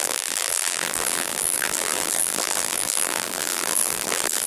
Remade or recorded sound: remade